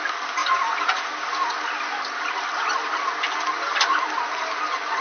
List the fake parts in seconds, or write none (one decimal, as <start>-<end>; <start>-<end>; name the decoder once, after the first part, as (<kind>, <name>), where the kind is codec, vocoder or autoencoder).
none